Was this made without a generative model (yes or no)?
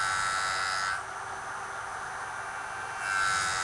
yes